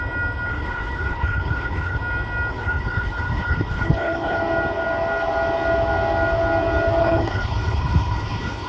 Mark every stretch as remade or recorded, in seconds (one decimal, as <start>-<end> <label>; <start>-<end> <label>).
0.0-0.5 recorded; 0.5-2.0 remade; 2.0-2.5 recorded; 2.5-4.4 remade; 4.4-7.0 recorded; 7.0-8.7 remade